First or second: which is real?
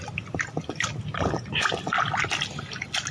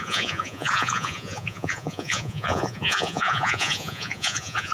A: first